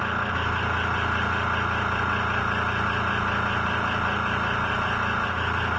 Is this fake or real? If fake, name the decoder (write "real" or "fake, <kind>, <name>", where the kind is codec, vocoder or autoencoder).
real